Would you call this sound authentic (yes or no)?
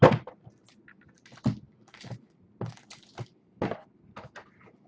yes